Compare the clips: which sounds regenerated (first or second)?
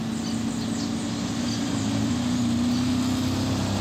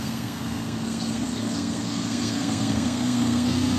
second